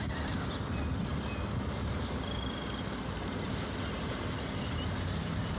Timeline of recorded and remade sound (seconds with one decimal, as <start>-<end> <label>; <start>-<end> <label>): 0.0-5.6 recorded